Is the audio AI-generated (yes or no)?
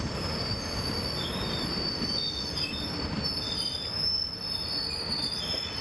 no